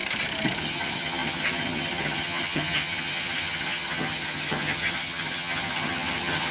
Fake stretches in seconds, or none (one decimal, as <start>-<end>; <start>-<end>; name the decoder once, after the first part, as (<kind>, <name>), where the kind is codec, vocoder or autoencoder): 0.6-6.5 (vocoder, HiFi-GAN)